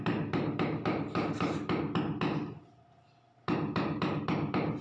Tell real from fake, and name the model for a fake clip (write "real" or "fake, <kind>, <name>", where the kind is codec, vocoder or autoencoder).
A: fake, vocoder, BigVGAN v2